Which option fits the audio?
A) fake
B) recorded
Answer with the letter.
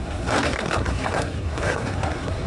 A